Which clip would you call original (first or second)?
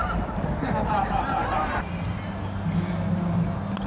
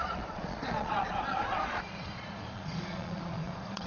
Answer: first